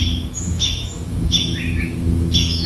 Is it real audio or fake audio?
fake